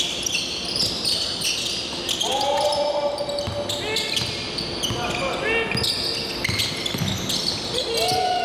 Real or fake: real